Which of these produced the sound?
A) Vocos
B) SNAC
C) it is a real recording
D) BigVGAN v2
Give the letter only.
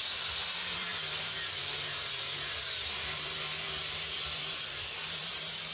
D